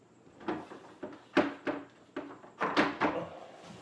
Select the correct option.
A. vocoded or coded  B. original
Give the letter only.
B